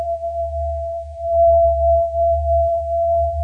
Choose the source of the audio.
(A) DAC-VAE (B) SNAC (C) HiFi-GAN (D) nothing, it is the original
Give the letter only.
B